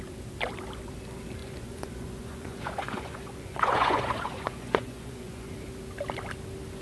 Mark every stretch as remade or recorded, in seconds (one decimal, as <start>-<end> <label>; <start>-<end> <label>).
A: 0.0-1.4 recorded; 1.4-5.5 remade; 5.5-6.8 recorded

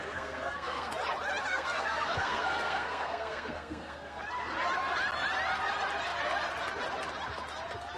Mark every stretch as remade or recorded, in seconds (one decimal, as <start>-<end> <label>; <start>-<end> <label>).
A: 0.0-0.9 remade; 0.9-1.5 recorded; 1.5-4.2 remade; 4.2-8.0 recorded

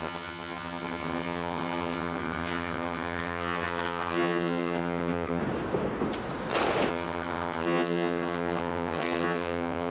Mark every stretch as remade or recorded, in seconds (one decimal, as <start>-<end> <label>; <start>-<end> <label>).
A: 0.0-5.4 remade; 5.4-6.9 recorded; 6.9-9.9 remade